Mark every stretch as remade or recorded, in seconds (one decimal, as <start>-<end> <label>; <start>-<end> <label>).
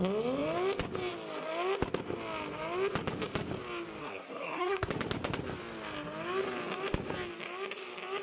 0.0-4.0 recorded; 4.0-4.9 remade; 4.9-8.2 recorded